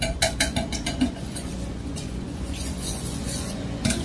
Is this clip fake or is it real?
fake